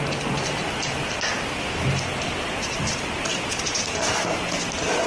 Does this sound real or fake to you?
real